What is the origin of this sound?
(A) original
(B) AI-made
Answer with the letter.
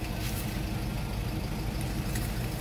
A